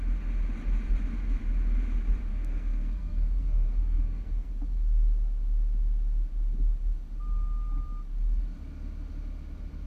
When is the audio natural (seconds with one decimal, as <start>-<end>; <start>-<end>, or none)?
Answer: 0.0-2.3; 4.5-9.9

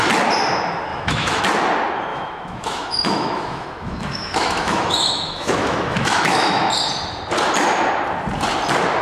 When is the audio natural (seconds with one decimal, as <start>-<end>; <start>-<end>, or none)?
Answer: 0.0-0.9; 1.4-2.1; 6.7-9.0

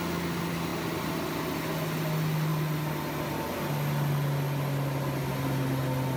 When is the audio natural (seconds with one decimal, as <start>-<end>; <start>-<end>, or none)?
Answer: 0.0-6.2

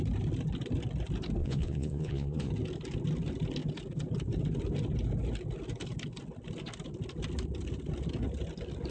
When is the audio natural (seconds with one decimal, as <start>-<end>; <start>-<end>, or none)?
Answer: 0.0-1.4; 2.5-8.9